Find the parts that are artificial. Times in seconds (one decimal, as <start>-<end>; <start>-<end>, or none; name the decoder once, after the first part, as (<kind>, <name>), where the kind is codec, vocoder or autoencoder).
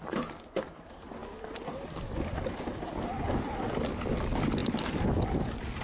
none